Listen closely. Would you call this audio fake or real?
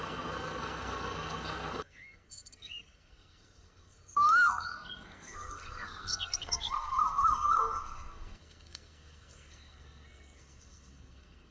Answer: fake